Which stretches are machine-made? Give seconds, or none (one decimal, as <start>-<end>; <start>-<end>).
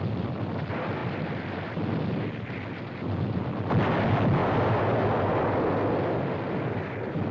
none